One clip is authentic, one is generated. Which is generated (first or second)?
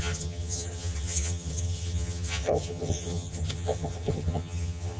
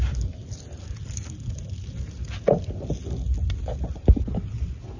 first